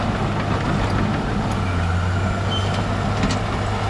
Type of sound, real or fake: real